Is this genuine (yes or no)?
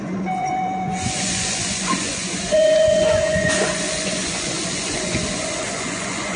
no